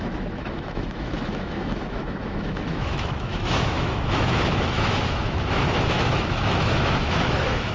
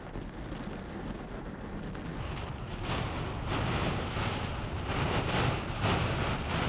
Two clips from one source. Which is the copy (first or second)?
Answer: first